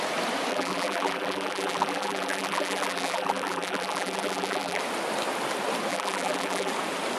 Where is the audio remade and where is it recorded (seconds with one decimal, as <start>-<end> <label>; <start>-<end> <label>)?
0.0-0.5 recorded; 0.5-4.8 remade; 4.8-5.9 recorded; 5.9-6.7 remade; 6.7-7.2 recorded